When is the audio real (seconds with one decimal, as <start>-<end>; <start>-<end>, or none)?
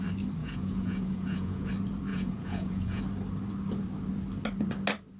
0.0-0.4; 1.7-2.1; 3.0-5.2